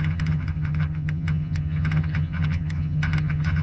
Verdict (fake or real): fake